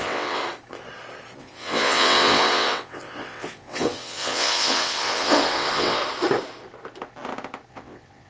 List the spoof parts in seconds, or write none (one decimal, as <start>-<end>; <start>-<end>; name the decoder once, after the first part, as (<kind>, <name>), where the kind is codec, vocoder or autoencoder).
0.0-0.4 (vocoder, WaveNeXt); 1.4-6.0; 7.7-8.3